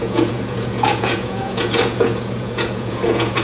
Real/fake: fake